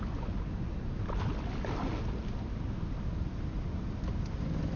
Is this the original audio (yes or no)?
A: yes